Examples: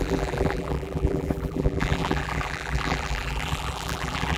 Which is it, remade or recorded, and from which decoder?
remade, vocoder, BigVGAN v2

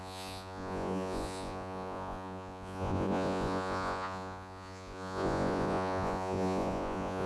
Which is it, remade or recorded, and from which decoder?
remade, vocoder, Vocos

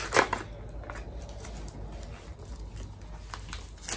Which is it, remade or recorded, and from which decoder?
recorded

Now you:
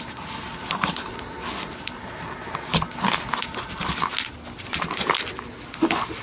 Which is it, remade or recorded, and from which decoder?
recorded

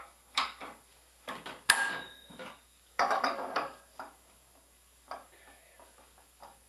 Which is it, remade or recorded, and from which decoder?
remade, codec, DAC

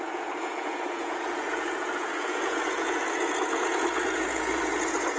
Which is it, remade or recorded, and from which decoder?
remade, vocoder, Vocos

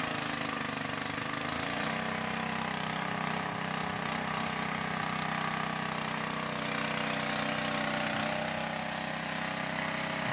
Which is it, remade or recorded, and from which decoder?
recorded